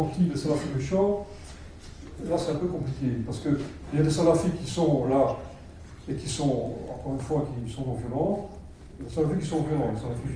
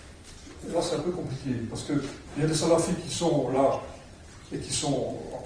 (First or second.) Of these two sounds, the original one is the first